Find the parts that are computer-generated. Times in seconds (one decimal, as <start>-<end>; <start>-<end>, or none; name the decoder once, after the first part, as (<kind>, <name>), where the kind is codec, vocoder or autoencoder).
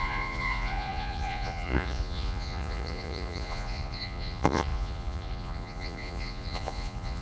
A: 0.0-7.2 (vocoder, Vocos)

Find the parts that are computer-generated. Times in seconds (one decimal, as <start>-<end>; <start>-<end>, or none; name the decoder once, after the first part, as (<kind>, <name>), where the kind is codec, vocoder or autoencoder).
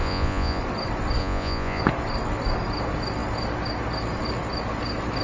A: 0.0-0.6 (vocoder, Vocos); 1.2-1.8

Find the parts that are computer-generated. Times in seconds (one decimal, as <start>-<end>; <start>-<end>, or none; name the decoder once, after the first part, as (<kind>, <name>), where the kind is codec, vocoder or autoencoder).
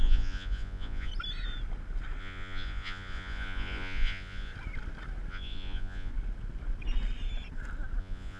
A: 0.0-1.1 (vocoder, Vocos); 2.2-4.5; 5.3-6.1; 8.0-8.4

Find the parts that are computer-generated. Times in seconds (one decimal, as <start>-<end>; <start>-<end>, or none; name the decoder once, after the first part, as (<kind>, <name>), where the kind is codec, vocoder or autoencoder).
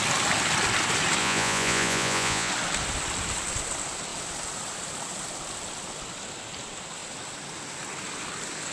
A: 1.2-2.5 (vocoder, Vocos)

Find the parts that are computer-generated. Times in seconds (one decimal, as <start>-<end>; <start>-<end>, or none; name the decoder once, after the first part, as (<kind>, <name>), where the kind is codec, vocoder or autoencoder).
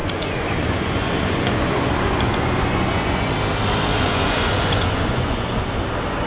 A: 0.0-3.3 (vocoder, Vocos); 3.9-5.7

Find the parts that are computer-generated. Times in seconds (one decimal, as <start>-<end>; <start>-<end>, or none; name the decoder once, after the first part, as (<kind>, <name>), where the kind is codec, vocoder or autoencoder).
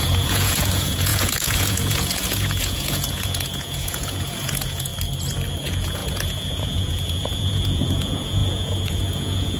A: 0.0-4.9 (vocoder, Vocos); 5.5-9.6